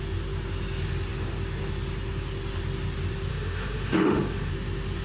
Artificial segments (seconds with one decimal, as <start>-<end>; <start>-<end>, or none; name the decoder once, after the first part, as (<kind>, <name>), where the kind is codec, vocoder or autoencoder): 3.3-4.5 (autoencoder, DAC-VAE)